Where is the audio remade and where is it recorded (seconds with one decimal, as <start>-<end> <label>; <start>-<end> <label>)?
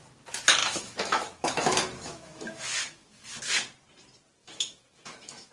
0.0-0.6 recorded; 0.6-3.4 remade; 3.4-4.4 recorded; 4.4-5.5 remade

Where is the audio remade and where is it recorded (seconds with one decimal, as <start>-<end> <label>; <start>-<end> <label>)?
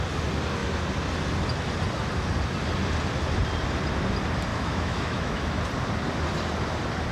0.0-4.5 recorded; 4.5-5.6 remade; 5.6-7.1 recorded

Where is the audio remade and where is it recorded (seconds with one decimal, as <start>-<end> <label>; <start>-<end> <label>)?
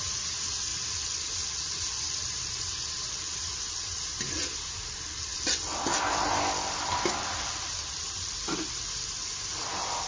0.0-10.1 recorded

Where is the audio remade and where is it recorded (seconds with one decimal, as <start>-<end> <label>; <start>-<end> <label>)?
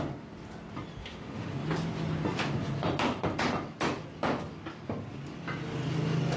0.0-1.0 recorded; 1.0-1.5 remade; 1.5-6.4 recorded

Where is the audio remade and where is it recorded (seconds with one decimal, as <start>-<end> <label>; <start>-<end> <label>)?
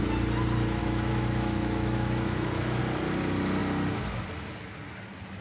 0.0-0.8 recorded; 0.8-2.8 remade; 2.8-5.4 recorded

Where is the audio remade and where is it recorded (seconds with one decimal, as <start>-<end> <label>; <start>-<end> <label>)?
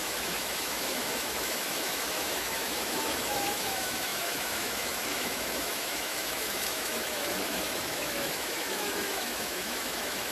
0.0-10.3 remade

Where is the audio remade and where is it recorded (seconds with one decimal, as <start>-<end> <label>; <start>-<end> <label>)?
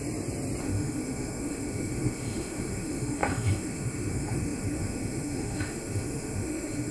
0.0-0.6 recorded; 0.6-6.9 remade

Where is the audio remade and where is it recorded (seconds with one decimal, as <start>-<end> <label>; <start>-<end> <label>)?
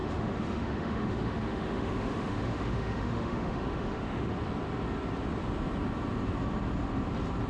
0.0-4.3 remade; 4.3-7.5 recorded